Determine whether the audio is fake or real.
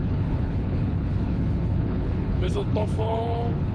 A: fake